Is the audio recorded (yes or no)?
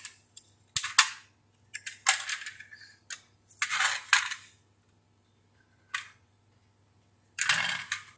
yes